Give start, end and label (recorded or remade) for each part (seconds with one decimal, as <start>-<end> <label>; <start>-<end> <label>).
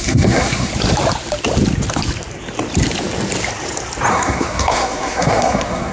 0.0-0.7 remade; 0.7-4.1 recorded; 4.1-5.9 remade